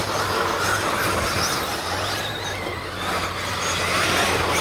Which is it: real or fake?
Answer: real